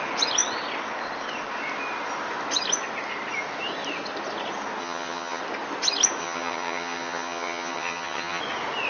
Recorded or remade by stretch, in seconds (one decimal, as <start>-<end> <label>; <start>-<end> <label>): 0.0-4.8 recorded; 4.8-5.4 remade; 5.4-6.2 recorded; 6.2-8.4 remade; 8.4-8.9 recorded